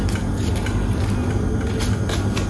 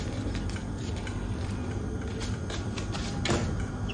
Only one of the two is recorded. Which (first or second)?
first